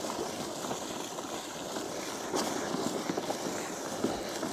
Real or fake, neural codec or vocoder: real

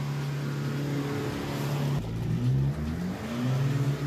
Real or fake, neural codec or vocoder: real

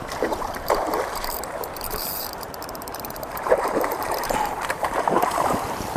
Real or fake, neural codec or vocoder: fake, vocoder, BigVGAN v2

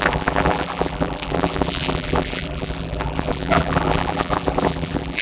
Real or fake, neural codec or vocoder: fake, vocoder, BigVGAN v2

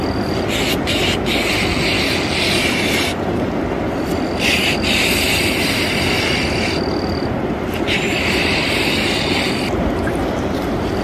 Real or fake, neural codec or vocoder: real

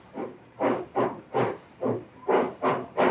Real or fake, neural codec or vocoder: fake, vocoder, BigVGAN v2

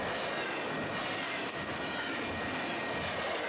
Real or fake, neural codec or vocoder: real